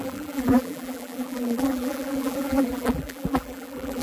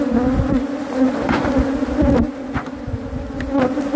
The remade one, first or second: first